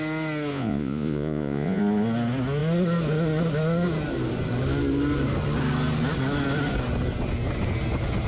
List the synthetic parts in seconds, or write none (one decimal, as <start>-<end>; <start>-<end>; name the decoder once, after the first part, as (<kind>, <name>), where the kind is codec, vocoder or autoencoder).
0.5-1.8 (vocoder, Vocos)